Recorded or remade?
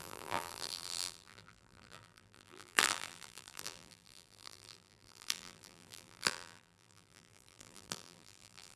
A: remade